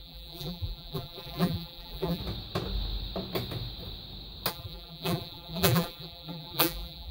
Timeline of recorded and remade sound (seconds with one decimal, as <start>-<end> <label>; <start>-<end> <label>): 0.0-2.2 remade; 2.2-4.5 recorded; 4.5-7.1 remade